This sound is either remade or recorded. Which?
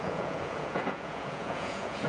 remade